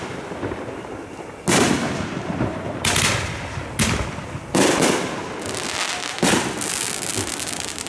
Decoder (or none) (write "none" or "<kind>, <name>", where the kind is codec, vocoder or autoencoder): none